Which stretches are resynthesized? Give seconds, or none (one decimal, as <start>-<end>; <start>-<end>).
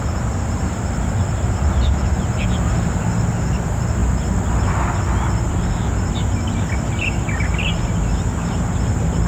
none